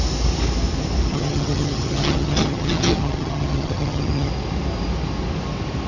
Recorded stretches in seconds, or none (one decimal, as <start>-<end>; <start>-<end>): 0.0-1.1; 4.3-5.9